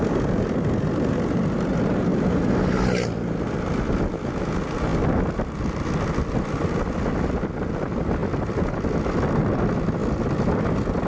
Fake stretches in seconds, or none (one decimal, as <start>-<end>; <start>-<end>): none